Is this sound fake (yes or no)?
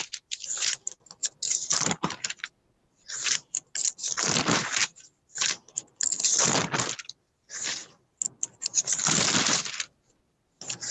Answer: no